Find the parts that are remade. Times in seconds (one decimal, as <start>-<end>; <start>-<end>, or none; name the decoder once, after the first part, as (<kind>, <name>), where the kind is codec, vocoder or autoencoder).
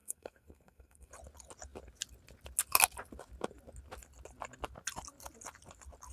0.0-1.1 (codec, SNAC)